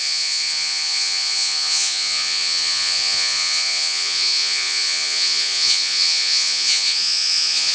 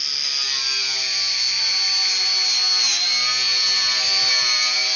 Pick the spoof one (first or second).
first